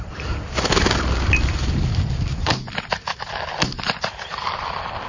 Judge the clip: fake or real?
real